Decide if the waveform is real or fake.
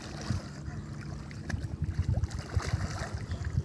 real